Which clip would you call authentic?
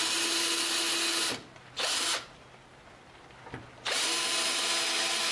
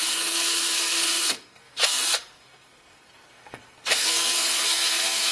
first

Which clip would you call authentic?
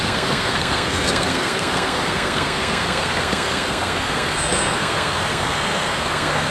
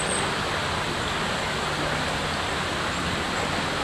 second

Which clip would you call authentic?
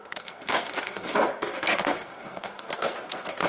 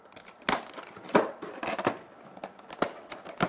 second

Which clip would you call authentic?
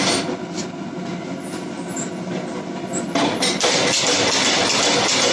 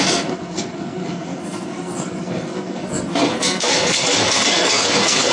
first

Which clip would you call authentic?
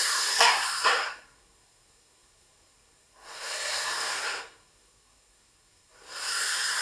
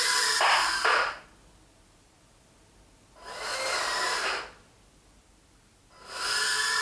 second